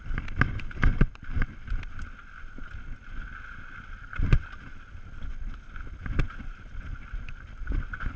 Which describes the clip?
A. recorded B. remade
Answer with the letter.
A